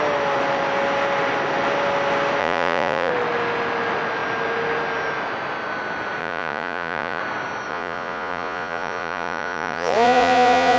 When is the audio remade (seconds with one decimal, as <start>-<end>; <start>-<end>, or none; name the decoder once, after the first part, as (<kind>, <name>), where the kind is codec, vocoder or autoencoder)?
2.4-3.1 (vocoder, Vocos); 6.2-7.2; 7.7-10.8